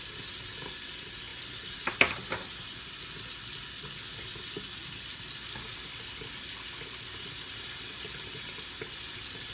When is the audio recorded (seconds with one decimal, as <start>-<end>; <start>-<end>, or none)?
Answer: 0.0-9.5